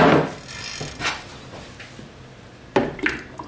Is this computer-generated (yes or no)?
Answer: no